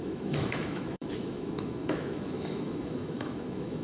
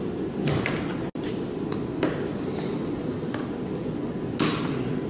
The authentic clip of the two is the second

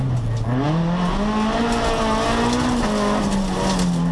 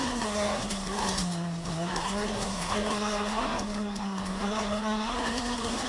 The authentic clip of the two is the first